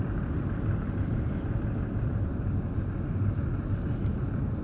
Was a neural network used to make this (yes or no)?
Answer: no